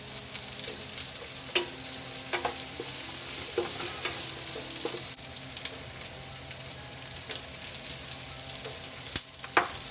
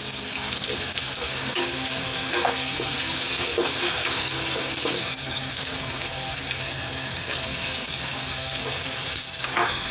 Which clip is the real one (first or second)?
first